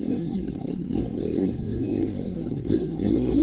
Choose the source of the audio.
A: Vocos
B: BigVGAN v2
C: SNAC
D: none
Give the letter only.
C